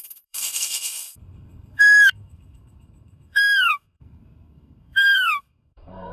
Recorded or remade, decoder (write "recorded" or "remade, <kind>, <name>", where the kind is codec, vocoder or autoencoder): remade, codec, SNAC